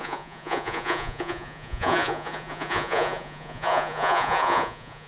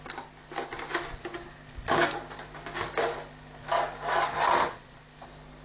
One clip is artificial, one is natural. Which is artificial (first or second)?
first